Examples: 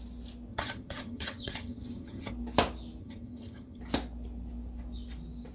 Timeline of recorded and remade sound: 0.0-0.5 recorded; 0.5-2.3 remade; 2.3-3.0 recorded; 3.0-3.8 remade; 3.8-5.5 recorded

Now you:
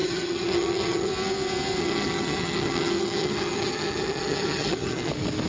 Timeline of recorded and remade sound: 0.0-1.1 remade; 1.1-1.8 recorded; 1.8-5.1 remade; 5.1-5.5 recorded

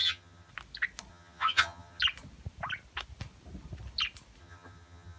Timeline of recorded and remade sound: 0.0-0.5 remade; 0.5-1.1 recorded; 1.1-2.0 remade; 2.0-4.4 recorded; 4.4-5.2 remade

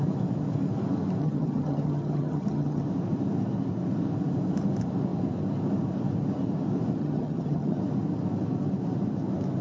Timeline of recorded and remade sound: 0.0-1.2 recorded; 1.2-2.8 remade; 2.8-7.0 recorded; 7.0-7.8 remade; 7.8-9.6 recorded